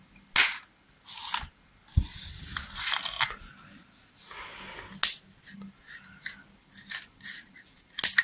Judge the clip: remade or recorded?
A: recorded